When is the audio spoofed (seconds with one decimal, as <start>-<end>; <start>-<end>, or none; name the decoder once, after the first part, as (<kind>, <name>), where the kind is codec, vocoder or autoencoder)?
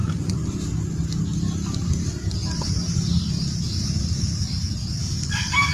5.0-5.7 (codec, DAC)